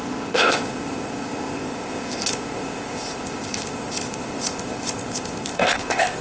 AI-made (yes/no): yes